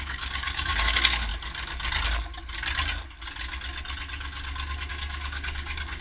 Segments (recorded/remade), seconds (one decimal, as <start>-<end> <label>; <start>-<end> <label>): 0.0-1.3 remade; 1.3-4.9 recorded; 4.9-6.0 remade